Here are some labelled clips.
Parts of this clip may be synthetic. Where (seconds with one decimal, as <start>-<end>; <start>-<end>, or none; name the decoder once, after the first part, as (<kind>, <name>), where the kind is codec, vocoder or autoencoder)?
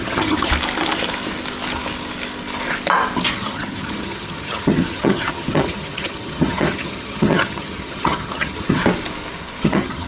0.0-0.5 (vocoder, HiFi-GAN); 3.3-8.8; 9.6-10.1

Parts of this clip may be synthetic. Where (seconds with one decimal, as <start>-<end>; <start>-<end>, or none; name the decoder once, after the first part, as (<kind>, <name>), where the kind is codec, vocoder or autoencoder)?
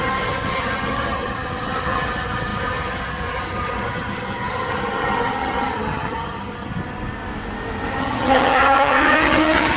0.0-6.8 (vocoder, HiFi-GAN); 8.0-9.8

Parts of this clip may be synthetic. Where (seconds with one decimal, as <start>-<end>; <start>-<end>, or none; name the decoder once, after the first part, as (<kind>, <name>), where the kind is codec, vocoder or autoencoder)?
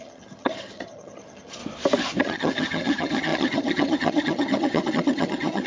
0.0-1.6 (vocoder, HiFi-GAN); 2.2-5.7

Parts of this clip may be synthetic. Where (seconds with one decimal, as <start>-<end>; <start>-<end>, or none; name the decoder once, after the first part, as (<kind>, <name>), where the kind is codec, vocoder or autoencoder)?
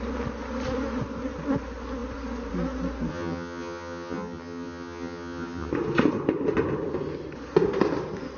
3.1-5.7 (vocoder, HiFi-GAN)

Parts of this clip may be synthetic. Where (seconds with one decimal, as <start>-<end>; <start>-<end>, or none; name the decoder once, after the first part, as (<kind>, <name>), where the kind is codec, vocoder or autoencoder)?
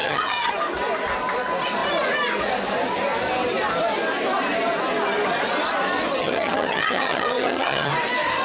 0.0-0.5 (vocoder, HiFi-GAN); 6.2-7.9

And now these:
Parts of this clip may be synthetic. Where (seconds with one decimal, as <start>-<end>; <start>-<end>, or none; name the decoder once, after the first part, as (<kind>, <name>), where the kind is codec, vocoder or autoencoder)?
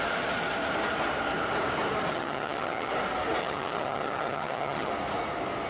2.1-2.9 (vocoder, HiFi-GAN); 3.4-4.9